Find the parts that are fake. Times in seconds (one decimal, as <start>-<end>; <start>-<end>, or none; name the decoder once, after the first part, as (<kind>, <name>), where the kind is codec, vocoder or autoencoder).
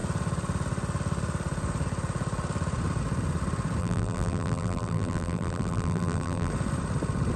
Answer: 3.8-6.5 (vocoder, BigVGAN v2)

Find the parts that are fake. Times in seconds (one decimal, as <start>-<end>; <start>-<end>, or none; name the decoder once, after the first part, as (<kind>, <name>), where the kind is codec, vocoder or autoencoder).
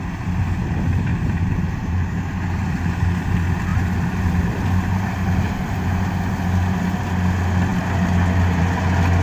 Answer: 1.1-2.2 (vocoder, BigVGAN v2); 3.7-6.1